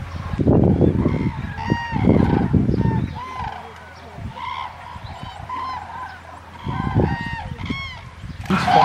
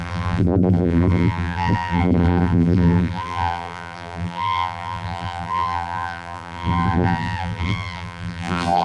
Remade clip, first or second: second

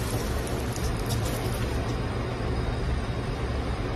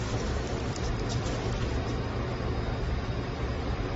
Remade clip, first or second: second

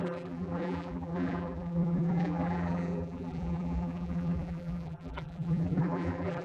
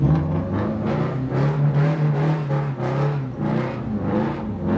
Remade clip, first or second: first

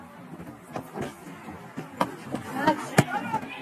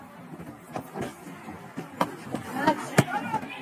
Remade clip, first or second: second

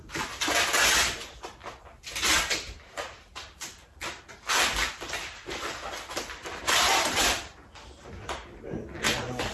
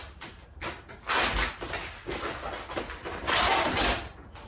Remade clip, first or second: first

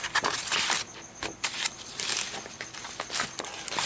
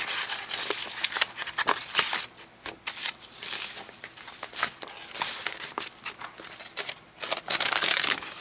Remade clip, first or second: first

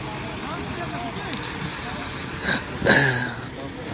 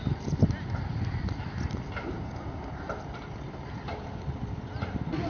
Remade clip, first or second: second